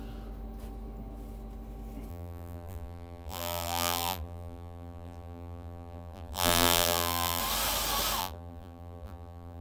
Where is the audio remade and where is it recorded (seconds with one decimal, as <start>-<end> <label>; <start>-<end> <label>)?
0.0-2.1 recorded; 2.1-7.4 remade; 7.4-8.2 recorded; 8.2-9.6 remade